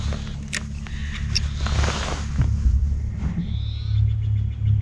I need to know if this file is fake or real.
real